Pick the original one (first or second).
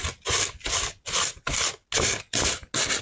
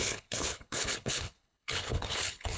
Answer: first